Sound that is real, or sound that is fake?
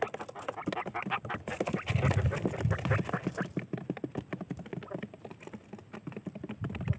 real